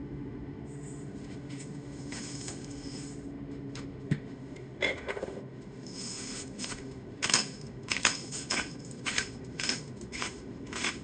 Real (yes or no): no